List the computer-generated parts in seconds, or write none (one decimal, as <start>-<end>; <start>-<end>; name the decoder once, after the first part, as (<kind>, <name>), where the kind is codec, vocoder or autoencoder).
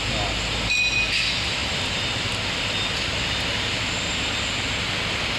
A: 1.6-4.1 (vocoder, BigVGAN v2)